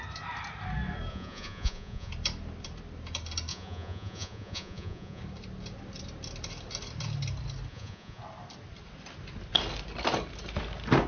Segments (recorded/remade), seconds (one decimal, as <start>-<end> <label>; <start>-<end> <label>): 0.0-1.1 recorded; 1.1-2.1 remade; 2.1-3.5 recorded; 3.5-5.2 remade; 5.2-7.7 recorded; 7.7-8.2 remade; 8.2-11.1 recorded